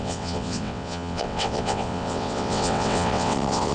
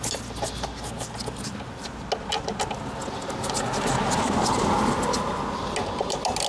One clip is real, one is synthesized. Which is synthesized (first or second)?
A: first